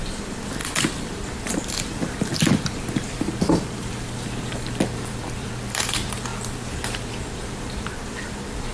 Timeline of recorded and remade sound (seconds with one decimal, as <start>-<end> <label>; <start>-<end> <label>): 0.0-8.7 remade